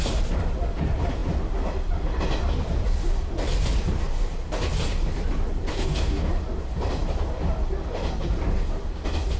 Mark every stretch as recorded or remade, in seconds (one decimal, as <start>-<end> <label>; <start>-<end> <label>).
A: 0.0-5.7 recorded; 5.7-6.3 remade; 6.3-9.4 recorded